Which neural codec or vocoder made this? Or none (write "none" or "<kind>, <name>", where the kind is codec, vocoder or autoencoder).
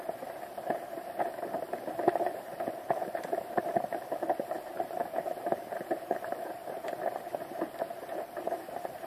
vocoder, BigVGAN v2